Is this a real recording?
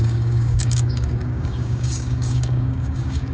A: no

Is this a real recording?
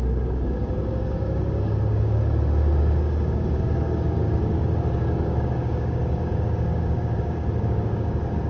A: no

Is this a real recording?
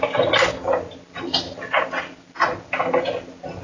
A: yes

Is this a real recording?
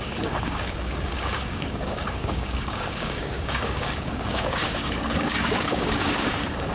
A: no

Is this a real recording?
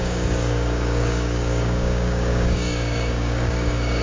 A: no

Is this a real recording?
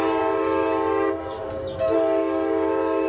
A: no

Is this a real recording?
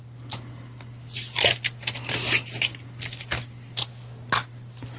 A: yes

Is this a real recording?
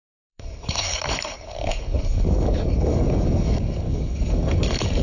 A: no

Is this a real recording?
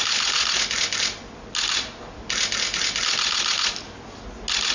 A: yes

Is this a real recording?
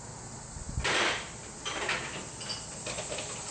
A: yes